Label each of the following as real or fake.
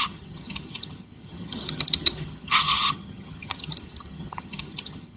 fake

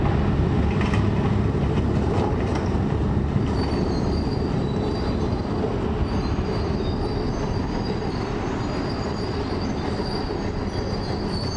real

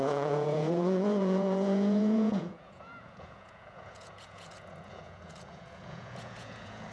fake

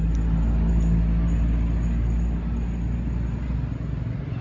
real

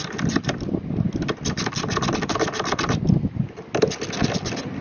real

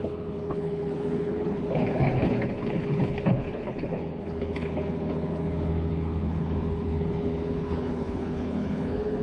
fake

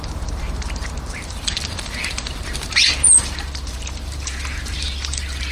fake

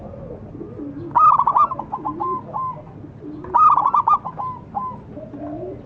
real